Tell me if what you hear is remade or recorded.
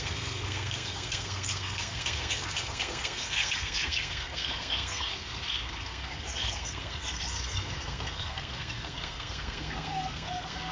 remade